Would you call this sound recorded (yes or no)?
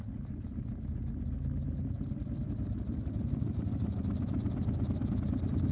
yes